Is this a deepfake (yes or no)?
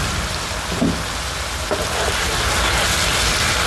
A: no